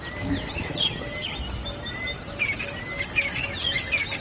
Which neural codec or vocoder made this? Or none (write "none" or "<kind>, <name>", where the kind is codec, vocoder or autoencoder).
none